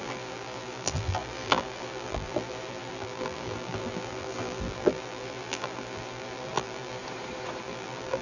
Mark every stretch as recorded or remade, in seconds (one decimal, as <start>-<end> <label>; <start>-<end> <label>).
0.0-7.0 remade; 7.0-7.6 recorded; 7.6-8.2 remade